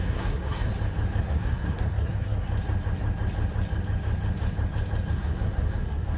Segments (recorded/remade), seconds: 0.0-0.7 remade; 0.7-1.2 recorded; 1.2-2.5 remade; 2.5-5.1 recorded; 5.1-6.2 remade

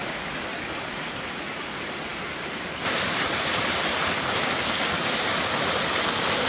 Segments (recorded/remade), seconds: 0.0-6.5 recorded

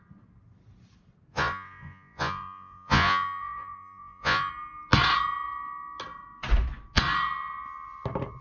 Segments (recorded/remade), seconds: 0.0-1.3 recorded; 1.3-4.5 remade; 4.5-8.4 recorded

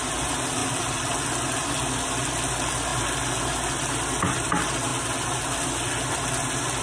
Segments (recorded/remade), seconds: 0.0-6.8 recorded

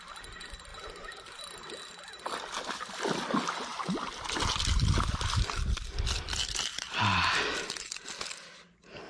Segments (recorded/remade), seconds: 0.0-0.7 recorded; 0.7-1.4 remade; 1.4-3.7 recorded; 3.7-4.4 remade; 4.4-6.7 recorded; 6.7-7.4 remade; 7.4-9.1 recorded